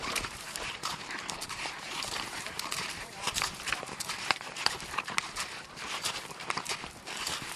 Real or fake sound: fake